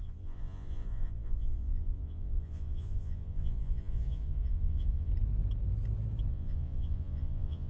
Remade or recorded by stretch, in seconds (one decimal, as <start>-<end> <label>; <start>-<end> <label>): 0.0-5.1 remade; 5.1-6.3 recorded; 6.3-7.7 remade